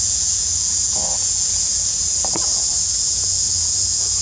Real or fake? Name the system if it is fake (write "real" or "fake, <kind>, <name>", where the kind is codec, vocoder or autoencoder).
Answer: fake, vocoder, Vocos